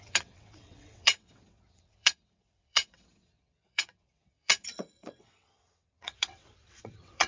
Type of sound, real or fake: fake